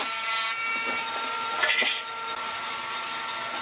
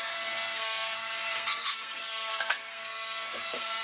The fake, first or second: second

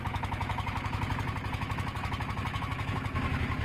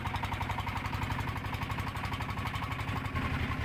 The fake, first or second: first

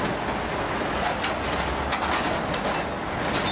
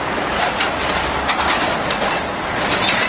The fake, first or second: second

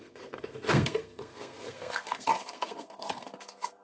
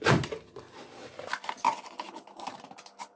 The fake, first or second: first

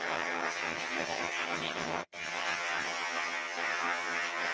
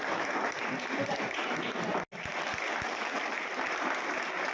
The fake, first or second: first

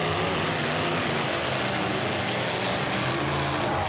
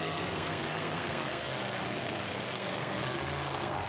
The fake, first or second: second